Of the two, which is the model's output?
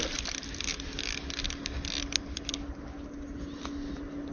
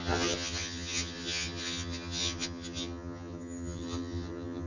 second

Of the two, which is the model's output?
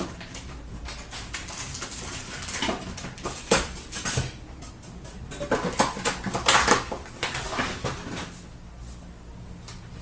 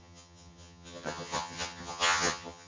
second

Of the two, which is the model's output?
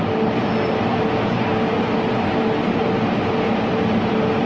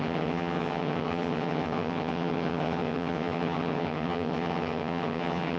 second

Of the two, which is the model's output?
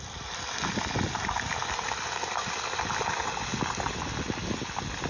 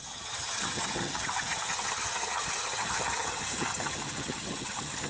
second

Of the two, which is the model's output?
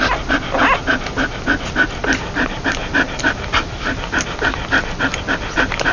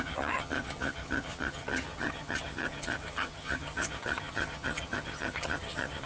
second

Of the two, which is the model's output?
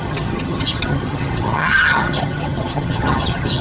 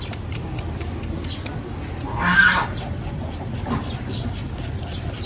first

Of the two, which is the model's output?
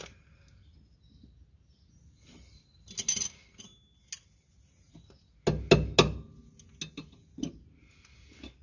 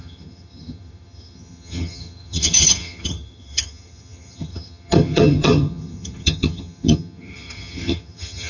second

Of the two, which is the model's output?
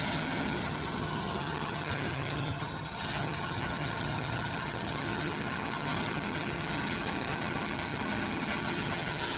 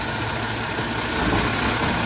first